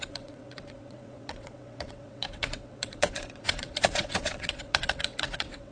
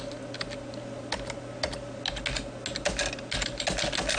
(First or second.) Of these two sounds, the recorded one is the second